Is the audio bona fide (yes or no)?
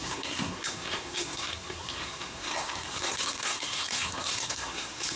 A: no